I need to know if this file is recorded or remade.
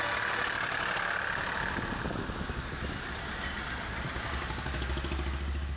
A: recorded